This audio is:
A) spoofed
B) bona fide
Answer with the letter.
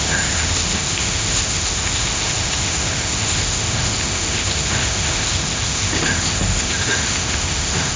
A